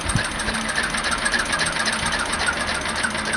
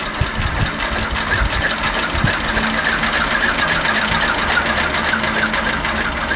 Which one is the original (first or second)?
second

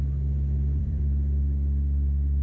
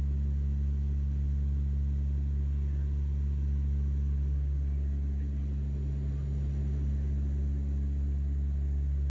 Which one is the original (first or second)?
second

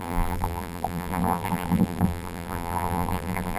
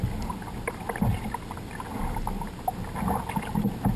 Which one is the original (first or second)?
second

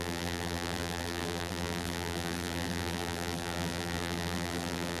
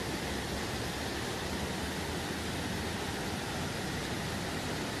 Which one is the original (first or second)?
second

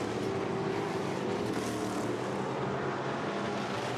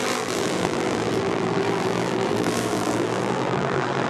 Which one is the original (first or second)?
first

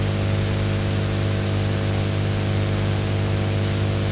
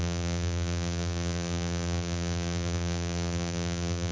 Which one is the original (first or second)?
first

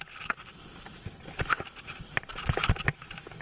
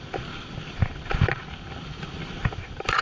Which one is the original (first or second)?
first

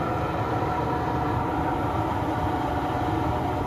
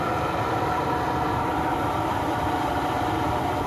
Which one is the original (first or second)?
first